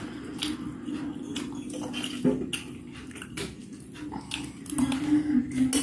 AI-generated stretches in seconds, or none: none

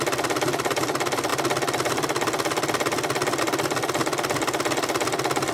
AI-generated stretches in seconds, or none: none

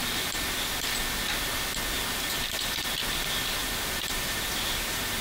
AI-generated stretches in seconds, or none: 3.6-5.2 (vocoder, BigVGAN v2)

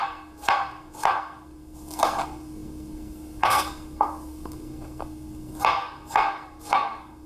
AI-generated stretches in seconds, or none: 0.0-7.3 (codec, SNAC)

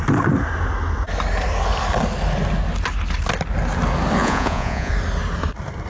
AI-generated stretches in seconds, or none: 4.2-4.9 (vocoder, Vocos)

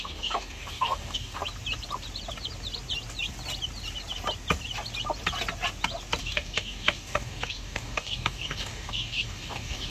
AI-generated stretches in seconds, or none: 0.0-1.4 (codec, DAC); 6.2-9.9

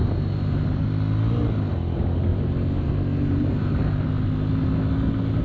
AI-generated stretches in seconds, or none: 0.0-0.9 (vocoder, BigVGAN v2); 2.3-3.7

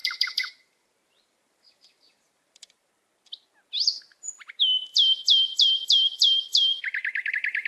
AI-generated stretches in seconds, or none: 0.0-2.9 (vocoder, BigVGAN v2)